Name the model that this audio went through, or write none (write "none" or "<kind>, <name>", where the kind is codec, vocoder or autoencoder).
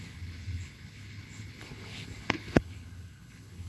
codec, HILCodec